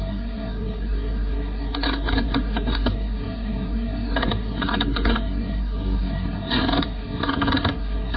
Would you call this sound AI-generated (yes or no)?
yes